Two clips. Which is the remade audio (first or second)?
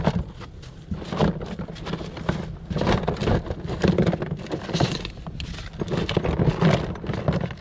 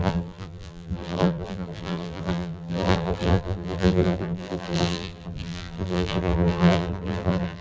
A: second